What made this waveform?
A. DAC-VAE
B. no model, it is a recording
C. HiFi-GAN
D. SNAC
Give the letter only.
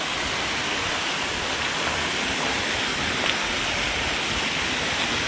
B